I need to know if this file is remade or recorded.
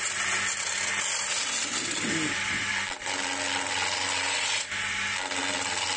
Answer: recorded